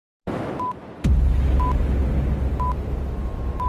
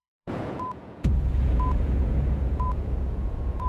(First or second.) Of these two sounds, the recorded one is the first